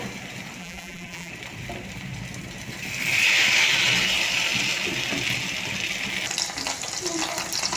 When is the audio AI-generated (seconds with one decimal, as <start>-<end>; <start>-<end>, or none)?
0.6-1.3